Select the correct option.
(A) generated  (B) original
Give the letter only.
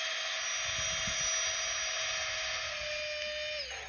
B